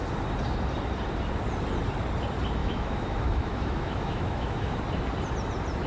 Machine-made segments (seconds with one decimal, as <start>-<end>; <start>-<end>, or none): 2.6-4.8